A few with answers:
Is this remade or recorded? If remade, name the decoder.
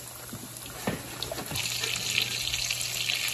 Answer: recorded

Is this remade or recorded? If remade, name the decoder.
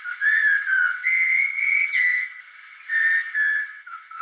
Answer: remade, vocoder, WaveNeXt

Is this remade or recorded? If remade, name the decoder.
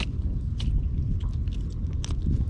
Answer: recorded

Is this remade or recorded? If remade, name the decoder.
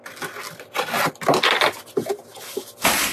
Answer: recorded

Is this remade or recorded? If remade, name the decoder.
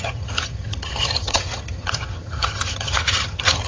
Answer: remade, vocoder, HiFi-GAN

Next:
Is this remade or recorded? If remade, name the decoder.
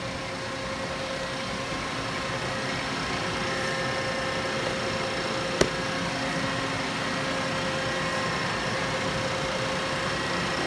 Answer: recorded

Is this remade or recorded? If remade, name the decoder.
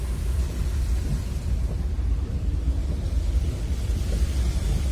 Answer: remade, vocoder, BigVGAN v2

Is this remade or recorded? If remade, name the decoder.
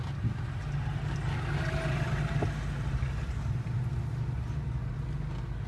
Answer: recorded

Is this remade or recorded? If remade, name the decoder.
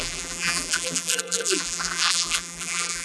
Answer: remade, vocoder, BigVGAN v2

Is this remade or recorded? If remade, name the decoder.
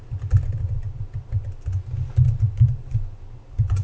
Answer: recorded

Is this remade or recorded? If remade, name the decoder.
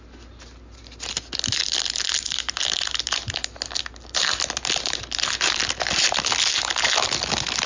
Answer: recorded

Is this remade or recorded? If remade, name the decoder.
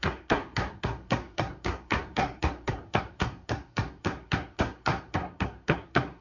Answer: remade, codec, SNAC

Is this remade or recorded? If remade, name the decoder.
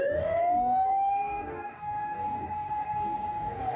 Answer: remade, codec, DAC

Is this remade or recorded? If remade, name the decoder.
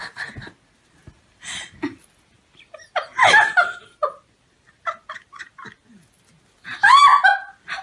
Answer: recorded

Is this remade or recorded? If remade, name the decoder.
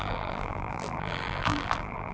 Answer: remade, vocoder, BigVGAN v2